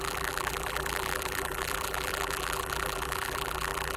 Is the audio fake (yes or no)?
yes